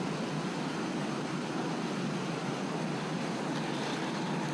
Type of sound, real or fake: real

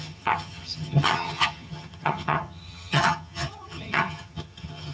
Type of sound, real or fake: fake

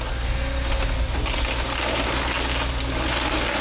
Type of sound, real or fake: real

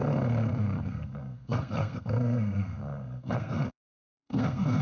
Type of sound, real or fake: fake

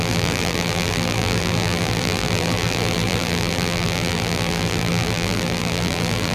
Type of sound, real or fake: fake